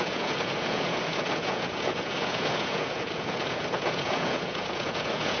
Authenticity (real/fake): fake